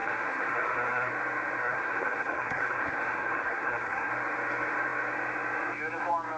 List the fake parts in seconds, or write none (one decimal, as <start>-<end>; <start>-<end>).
0.0-1.1; 1.6-4.1